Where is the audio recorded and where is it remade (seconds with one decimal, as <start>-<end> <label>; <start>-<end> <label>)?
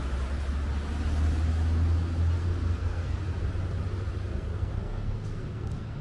0.0-2.4 recorded; 2.4-3.2 remade; 3.2-4.3 recorded; 4.3-6.0 remade